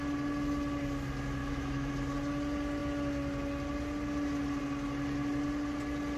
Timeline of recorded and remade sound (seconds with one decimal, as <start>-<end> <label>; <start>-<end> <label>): 0.0-1.4 recorded; 1.4-1.9 remade; 1.9-6.2 recorded